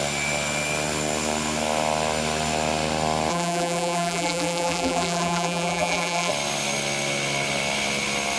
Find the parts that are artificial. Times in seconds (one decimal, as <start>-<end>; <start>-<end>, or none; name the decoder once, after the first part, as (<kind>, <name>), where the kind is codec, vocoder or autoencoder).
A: 3.3-6.3 (vocoder, BigVGAN v2)